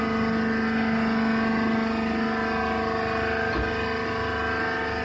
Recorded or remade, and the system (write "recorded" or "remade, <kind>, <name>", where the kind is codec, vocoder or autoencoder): recorded